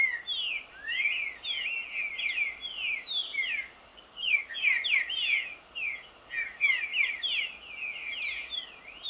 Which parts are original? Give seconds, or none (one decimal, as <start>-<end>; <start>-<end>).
0.0-3.9; 4.5-9.1